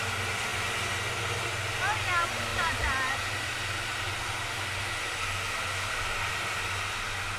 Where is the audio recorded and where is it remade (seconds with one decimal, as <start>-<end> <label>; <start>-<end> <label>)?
0.0-7.4 recorded